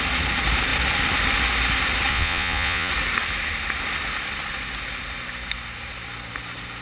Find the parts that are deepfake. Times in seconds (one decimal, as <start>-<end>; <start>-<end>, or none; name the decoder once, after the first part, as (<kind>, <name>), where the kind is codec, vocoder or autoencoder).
2.1-2.9 (vocoder, Vocos)